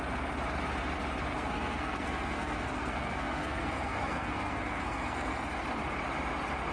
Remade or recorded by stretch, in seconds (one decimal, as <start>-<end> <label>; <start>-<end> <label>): 0.0-1.3 recorded; 1.3-5.3 remade; 5.3-6.7 recorded